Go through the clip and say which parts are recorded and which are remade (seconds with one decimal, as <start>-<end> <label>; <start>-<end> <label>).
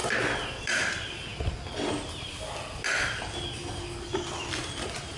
0.0-5.2 recorded